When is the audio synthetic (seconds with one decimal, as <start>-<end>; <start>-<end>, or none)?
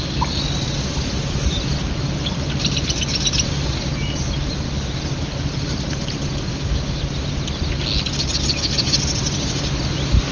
6.5-7.0